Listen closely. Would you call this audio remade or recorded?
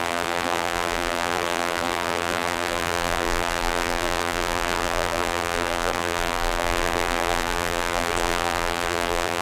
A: remade